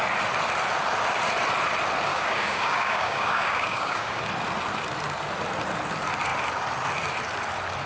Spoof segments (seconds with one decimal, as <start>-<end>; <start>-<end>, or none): 2.1-4.2

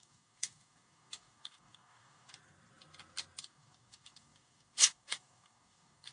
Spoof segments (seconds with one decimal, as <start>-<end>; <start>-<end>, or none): 0.0-2.3; 3.4-6.1

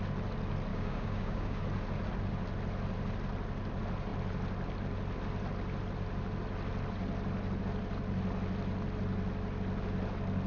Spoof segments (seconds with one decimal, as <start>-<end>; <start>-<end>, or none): 0.7-1.6